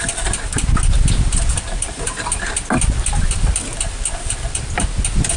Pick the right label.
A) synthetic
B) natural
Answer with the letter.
B